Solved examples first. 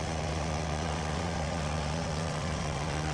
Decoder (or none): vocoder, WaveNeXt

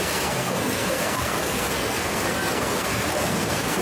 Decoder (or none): codec, SNAC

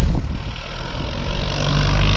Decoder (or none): none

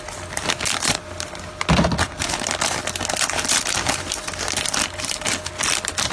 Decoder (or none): none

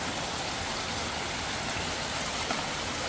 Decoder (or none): none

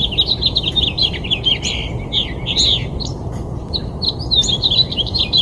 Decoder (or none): none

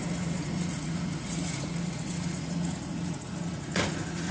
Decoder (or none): vocoder, Vocos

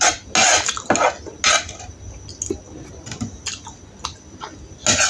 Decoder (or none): none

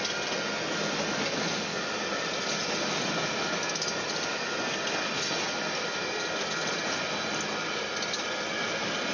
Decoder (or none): none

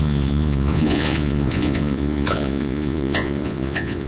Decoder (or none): vocoder, Vocos